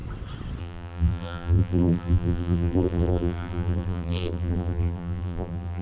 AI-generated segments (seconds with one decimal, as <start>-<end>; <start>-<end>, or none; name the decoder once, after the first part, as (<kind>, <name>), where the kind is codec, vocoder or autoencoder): 0.6-5.8 (vocoder, BigVGAN v2)